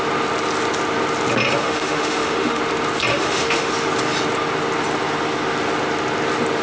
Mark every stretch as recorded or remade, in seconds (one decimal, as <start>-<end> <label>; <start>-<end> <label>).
0.0-1.6 recorded; 1.6-2.6 remade; 2.6-3.1 recorded; 3.1-3.7 remade; 3.7-6.6 recorded